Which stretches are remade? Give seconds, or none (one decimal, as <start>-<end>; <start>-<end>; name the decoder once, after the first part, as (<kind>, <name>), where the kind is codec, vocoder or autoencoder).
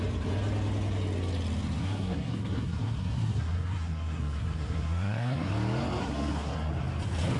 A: 1.8-5.5 (codec, SNAC); 6.0-6.7